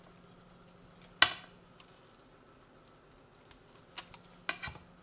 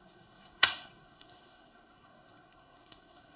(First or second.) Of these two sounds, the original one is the first